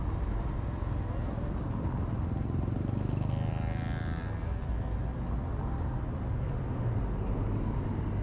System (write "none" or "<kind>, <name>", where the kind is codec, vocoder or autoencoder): none